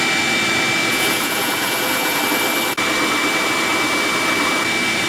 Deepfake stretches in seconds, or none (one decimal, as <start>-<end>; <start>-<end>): 0.8-2.2